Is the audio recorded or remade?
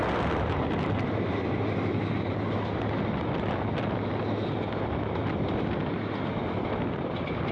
recorded